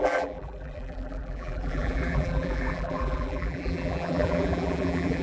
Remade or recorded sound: remade